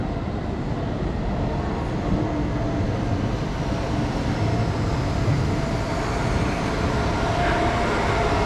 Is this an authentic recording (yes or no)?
yes